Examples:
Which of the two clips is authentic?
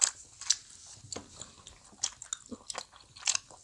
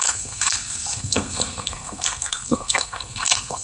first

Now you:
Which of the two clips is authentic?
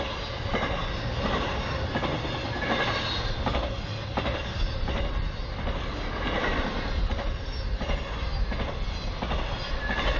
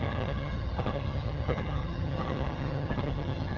first